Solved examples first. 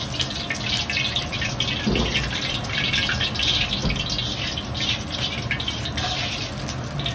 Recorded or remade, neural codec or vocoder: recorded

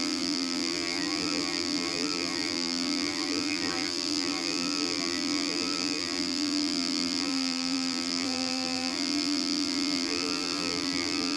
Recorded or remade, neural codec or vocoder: remade, vocoder, BigVGAN v2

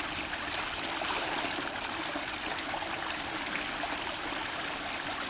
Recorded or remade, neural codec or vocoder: recorded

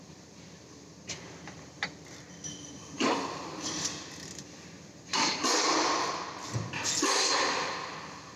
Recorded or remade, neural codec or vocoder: recorded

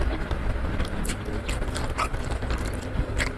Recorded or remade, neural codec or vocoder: remade, vocoder, BigVGAN v2